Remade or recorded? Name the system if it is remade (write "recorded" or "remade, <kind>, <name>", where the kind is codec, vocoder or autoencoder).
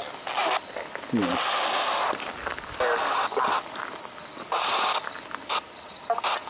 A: recorded